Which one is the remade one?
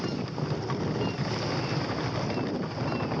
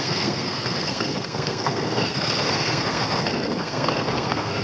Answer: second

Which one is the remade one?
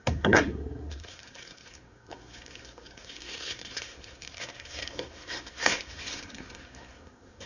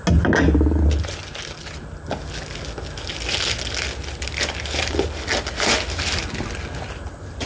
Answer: first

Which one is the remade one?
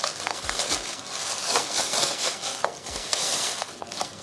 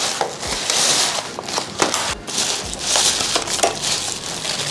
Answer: first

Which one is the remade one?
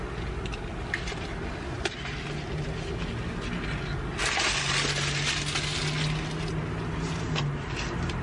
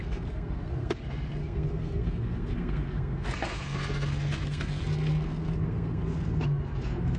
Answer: second